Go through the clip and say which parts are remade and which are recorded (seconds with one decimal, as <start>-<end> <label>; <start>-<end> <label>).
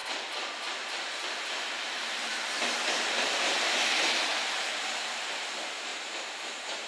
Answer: 0.0-1.6 recorded; 1.6-4.3 remade; 4.3-4.8 recorded; 4.8-6.9 remade